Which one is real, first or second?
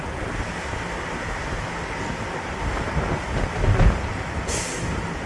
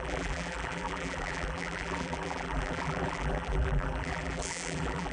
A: first